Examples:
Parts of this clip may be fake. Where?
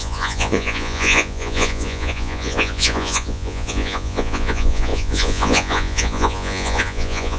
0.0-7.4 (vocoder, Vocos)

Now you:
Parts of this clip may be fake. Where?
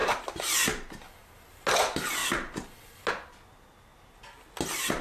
none